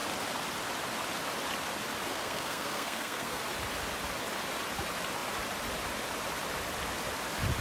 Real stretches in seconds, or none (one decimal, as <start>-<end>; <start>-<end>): 0.0-2.1; 3.4-7.6